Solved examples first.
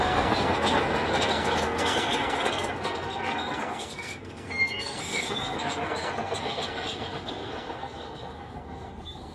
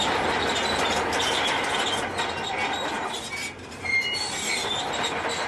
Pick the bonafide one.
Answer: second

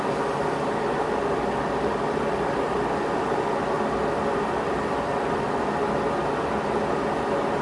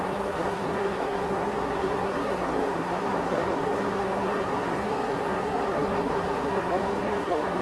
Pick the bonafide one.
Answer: first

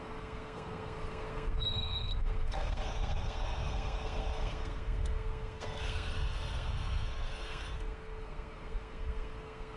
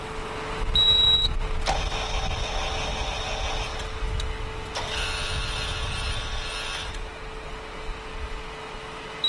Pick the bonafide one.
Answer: second